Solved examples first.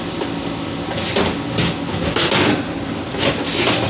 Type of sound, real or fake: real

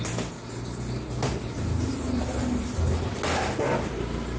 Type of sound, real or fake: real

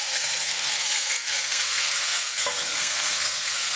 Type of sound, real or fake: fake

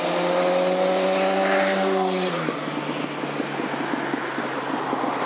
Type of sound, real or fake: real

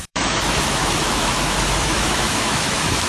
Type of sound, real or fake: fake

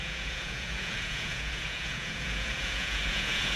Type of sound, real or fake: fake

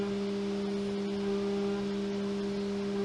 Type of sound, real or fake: real